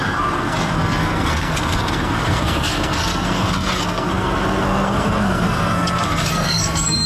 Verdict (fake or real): fake